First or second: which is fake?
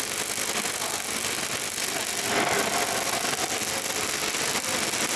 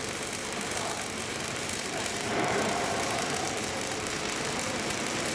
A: second